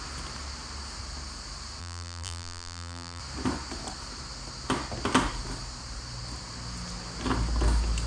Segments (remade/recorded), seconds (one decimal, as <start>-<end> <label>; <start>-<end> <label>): 0.0-1.8 recorded; 1.8-3.2 remade; 3.2-8.1 recorded